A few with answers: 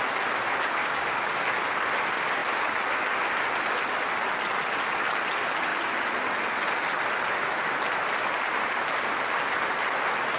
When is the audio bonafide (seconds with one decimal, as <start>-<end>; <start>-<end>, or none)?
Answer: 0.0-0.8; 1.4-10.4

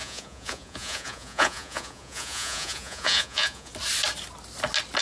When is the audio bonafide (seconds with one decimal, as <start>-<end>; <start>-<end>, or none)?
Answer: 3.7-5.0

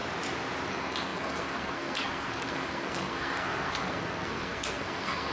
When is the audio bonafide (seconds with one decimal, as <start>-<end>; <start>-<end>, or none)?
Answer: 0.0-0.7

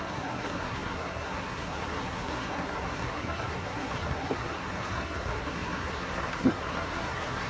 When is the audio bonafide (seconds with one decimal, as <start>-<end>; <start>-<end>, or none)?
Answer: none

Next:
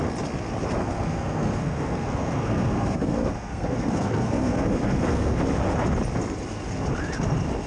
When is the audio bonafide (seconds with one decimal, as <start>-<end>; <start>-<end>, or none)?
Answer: 0.0-0.8; 5.4-7.7